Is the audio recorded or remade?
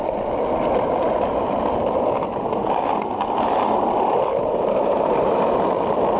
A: recorded